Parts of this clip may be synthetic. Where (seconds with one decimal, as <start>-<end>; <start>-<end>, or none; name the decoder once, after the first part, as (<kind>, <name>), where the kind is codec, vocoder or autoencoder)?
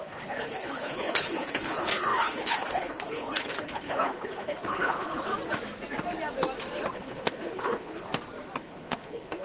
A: 0.0-5.3 (codec, HILCodec); 6.9-8.1; 8.6-9.4